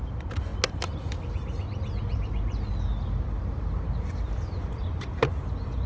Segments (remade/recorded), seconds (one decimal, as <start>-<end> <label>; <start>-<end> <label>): 0.0-5.9 recorded